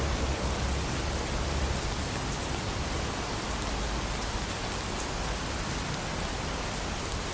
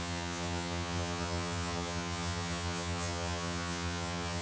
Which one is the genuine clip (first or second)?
first